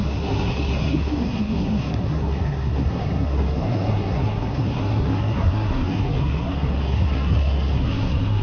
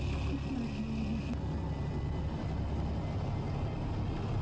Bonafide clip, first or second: second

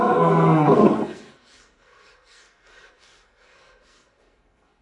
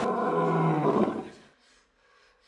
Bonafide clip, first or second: second